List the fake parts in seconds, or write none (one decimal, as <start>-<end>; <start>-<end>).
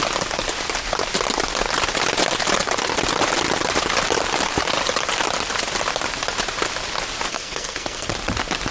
7.3-8.1